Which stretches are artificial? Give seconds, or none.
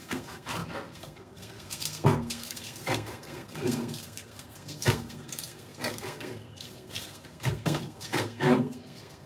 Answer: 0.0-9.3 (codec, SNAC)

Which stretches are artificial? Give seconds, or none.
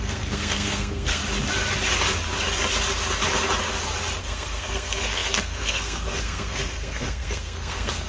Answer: 0.0-1.2 (codec, SNAC); 4.2-8.1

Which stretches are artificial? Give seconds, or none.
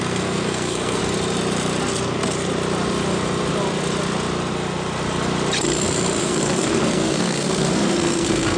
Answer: 0.0-1.0 (codec, SNAC); 6.2-8.6